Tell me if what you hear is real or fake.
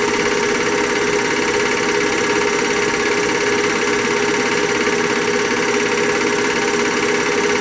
real